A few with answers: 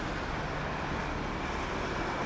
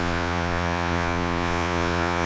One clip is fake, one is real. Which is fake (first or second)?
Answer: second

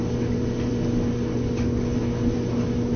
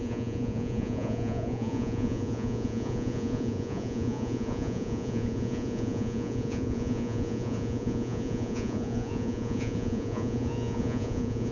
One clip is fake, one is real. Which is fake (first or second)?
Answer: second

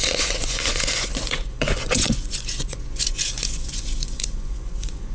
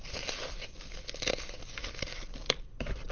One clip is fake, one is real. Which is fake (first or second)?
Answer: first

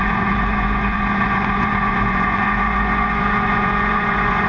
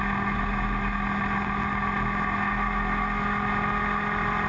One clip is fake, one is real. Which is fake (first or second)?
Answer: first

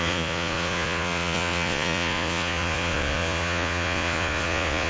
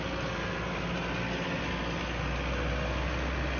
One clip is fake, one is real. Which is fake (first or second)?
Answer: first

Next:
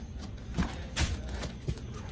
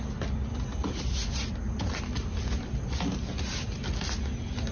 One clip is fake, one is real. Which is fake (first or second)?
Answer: first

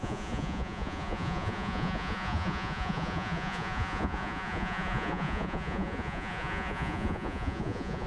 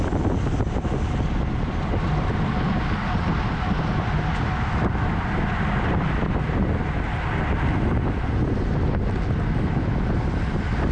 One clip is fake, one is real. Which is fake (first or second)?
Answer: first